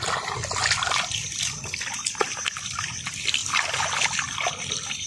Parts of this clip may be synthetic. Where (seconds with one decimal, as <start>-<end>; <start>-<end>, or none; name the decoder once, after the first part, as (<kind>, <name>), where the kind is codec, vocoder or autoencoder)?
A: none